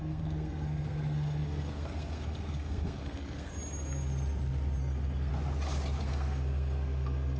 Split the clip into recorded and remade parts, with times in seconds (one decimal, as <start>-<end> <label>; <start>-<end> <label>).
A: 0.0-3.5 remade; 3.5-4.8 recorded; 4.8-5.3 remade; 5.3-6.0 recorded; 6.0-7.4 remade